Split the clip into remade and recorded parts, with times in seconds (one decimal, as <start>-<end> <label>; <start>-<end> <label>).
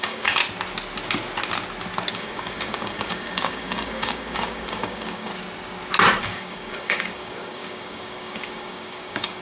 0.0-0.4 remade; 0.4-2.1 recorded; 2.1-5.3 remade; 5.3-6.2 recorded; 6.2-9.4 remade